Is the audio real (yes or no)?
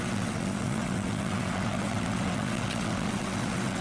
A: no